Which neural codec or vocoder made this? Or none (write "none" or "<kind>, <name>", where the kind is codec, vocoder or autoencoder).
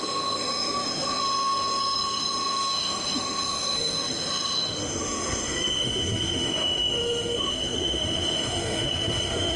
autoencoder, DAC-VAE